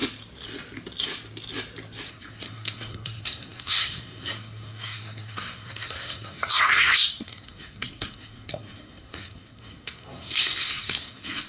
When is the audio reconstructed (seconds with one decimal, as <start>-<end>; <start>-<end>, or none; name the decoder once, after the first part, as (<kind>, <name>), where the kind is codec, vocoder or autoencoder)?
2.1-11.5 (codec, SNAC)